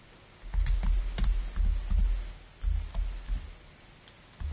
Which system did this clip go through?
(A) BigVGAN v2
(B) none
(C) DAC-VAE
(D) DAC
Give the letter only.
B